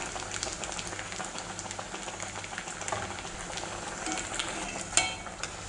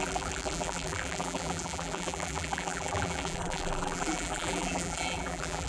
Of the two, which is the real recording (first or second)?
first